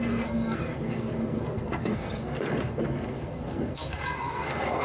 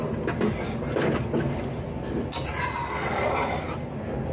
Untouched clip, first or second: second